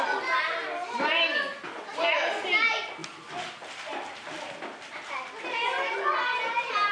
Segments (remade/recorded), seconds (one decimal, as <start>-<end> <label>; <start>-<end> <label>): 0.0-6.9 recorded